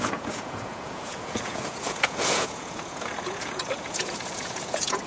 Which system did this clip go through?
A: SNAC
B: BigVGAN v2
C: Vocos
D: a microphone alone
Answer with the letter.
C